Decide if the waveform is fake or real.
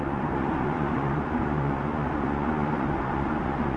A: fake